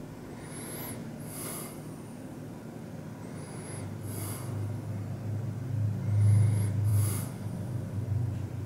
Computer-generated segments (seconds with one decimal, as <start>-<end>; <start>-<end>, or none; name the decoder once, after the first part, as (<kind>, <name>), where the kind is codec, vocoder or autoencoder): none